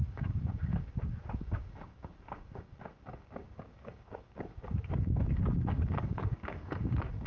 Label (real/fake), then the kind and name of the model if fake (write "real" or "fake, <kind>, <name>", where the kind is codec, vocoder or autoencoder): fake, codec, DAC